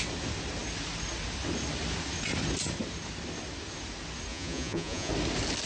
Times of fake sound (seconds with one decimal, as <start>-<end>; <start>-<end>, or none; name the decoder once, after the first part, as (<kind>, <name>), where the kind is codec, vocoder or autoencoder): 4.3-5.1 (vocoder, Vocos)

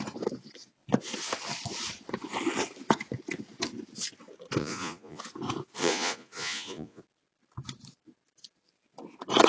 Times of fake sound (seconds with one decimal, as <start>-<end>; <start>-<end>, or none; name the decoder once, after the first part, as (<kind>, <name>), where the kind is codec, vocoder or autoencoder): 4.6-5.2 (vocoder, Vocos); 5.8-7.0

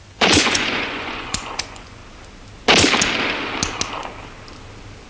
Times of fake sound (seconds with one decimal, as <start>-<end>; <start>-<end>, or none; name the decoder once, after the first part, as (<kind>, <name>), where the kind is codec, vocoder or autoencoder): 0.0-2.0 (vocoder, Vocos)

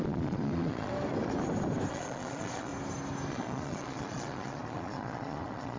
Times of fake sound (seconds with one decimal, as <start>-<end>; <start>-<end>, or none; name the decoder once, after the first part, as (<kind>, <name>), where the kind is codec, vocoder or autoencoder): 0.0-0.9 (vocoder, Vocos); 1.9-2.7; 3.3-5.8

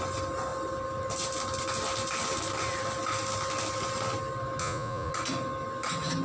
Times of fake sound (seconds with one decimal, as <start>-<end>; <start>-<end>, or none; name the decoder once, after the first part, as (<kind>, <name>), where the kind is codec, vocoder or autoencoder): 4.6-5.1 (vocoder, Vocos)

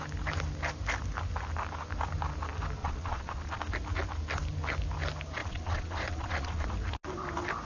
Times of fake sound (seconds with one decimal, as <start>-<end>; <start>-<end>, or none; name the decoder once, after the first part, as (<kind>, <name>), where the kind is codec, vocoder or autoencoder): 2.8-3.6 (vocoder, Vocos); 5.4-6.7

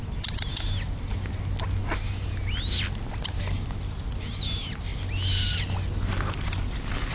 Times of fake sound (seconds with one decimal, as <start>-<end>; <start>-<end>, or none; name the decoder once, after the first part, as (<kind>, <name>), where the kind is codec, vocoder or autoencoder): none